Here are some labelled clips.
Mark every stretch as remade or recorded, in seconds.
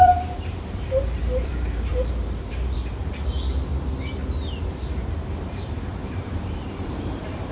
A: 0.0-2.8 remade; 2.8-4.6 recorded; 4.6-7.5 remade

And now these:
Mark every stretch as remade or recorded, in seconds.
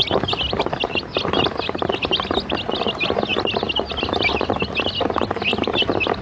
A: 0.0-6.2 recorded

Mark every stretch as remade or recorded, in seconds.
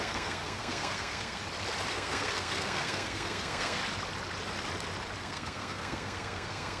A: 0.0-1.4 remade; 1.4-1.9 recorded; 1.9-3.8 remade; 3.8-5.2 recorded; 5.2-6.8 remade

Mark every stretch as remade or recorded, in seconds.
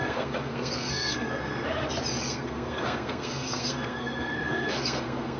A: 0.0-1.5 remade; 1.5-2.2 recorded; 2.2-5.4 remade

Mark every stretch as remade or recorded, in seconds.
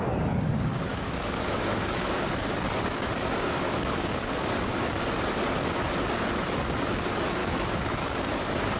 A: 0.0-0.9 recorded; 0.9-4.9 remade; 4.9-7.4 recorded; 7.4-8.8 remade